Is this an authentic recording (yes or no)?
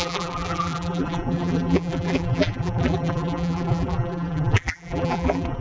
no